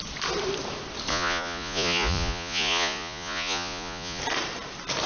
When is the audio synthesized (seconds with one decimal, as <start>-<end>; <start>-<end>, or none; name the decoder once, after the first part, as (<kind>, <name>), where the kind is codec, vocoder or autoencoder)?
1.1-4.2 (vocoder, Vocos)